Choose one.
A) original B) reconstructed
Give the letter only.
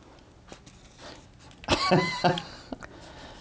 A